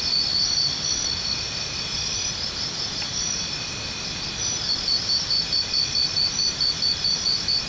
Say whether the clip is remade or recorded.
recorded